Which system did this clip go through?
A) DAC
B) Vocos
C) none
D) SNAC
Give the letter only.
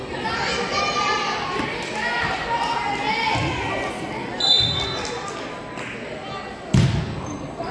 C